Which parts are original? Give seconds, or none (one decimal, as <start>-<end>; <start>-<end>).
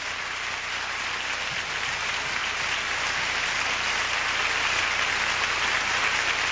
0.0-6.5